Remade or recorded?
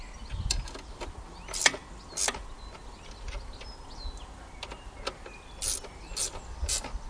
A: recorded